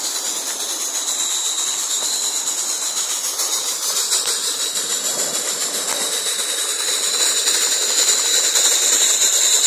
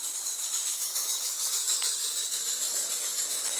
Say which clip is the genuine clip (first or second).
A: first